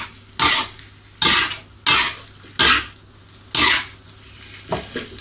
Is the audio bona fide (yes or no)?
yes